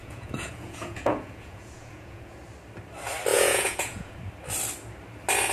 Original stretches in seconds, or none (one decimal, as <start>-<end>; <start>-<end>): 2.4-3.3; 4.2-5.5